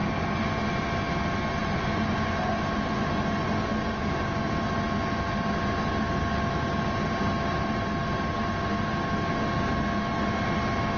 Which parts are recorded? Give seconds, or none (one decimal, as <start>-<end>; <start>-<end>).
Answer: 0.7-1.6; 4.5-11.0